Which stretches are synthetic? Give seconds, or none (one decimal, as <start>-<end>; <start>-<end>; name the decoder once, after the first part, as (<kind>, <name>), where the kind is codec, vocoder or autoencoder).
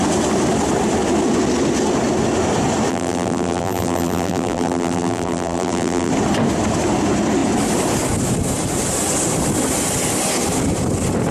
2.9-6.1 (vocoder, BigVGAN v2)